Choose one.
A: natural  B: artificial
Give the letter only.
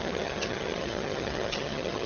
B